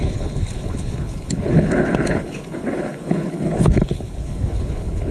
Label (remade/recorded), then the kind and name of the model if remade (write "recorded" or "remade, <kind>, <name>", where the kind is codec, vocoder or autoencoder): remade, codec, HILCodec